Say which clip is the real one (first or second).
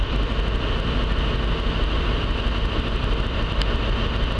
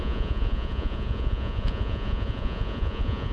first